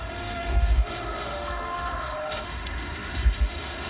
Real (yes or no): no